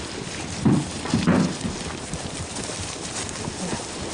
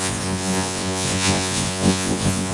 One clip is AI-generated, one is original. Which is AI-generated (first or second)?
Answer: second